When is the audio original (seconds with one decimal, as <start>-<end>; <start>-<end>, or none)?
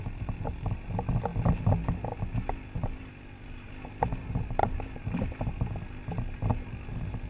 0.0-7.3